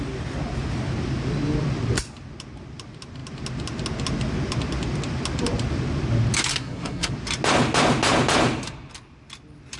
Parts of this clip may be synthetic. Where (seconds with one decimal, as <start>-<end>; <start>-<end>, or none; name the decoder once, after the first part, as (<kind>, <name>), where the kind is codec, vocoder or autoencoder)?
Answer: 6.5-7.1 (codec, SNAC)